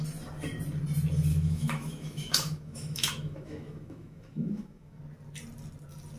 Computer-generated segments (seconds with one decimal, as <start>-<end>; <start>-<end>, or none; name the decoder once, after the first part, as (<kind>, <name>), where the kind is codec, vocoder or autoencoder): 1.3-5.0 (autoencoder, DAC-VAE)